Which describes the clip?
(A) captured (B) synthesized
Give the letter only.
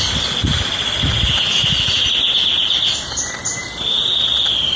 A